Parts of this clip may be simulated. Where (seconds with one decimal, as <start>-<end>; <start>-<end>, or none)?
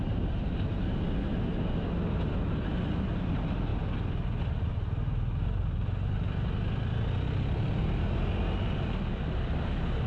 none